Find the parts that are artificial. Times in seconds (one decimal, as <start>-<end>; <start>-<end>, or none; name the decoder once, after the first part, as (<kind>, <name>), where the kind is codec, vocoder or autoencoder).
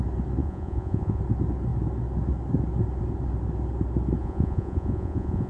0.4-1.2 (vocoder, Vocos); 4.2-5.5